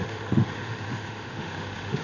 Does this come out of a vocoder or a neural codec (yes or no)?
yes